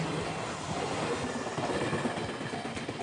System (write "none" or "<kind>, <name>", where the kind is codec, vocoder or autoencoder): none